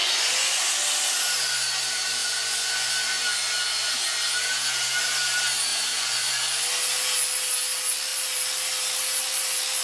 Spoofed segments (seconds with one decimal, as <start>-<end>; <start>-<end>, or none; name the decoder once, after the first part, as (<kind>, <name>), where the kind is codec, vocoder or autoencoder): 0.0-0.7 (vocoder, Vocos); 2.2-2.9; 5.7-6.3